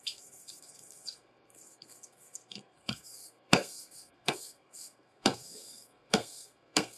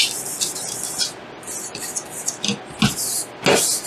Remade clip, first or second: first